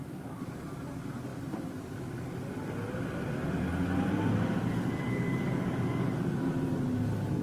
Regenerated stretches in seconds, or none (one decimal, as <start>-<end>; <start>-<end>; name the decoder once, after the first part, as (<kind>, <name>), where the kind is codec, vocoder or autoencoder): 0.0-0.9 (codec, DAC); 5.0-6.1